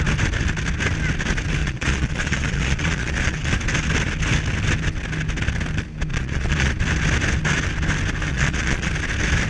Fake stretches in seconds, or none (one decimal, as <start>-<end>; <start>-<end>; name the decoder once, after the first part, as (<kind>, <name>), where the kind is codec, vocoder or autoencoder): 1.6-3.5 (vocoder, Vocos); 6.1-6.7; 8.3-8.9